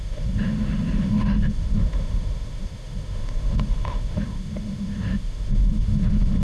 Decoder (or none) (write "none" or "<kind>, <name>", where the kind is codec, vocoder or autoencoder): autoencoder, DAC-VAE